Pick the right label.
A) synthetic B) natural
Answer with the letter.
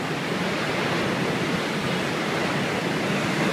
B